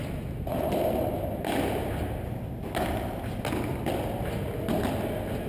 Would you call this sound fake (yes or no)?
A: no